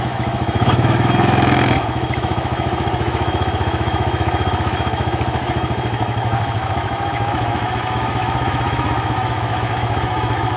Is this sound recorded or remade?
remade